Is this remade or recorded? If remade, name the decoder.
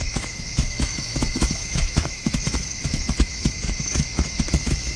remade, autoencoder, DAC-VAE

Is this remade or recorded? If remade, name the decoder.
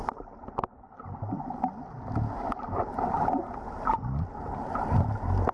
recorded